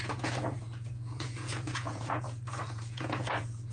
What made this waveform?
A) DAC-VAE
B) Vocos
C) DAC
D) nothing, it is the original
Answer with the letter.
B